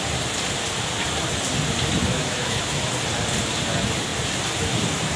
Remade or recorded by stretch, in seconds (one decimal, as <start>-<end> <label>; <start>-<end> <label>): 0.0-2.1 recorded; 2.1-2.9 remade; 2.9-5.2 recorded